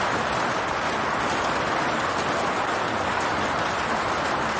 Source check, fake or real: real